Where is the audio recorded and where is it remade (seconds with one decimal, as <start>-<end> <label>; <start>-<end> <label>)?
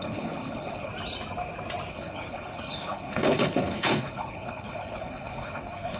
0.0-0.9 remade; 0.9-1.9 recorded; 1.9-6.0 remade